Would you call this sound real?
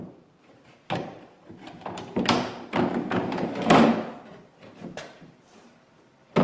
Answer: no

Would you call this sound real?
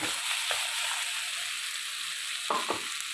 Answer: yes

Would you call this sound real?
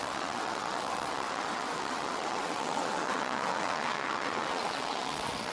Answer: no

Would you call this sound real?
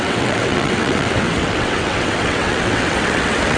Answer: no